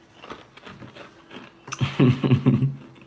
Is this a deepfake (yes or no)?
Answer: no